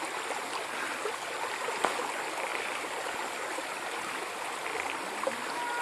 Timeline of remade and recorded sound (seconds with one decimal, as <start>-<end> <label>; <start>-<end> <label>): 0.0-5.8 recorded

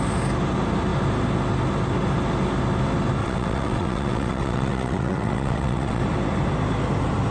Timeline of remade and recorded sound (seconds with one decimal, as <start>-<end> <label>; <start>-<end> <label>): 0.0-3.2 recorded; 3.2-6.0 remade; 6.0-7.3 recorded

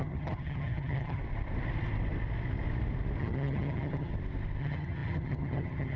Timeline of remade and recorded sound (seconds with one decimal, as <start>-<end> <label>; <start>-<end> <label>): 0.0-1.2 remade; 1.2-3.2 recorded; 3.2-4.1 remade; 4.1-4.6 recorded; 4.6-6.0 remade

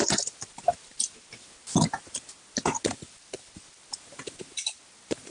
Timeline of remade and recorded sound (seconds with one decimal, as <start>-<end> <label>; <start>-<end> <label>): 0.0-5.3 recorded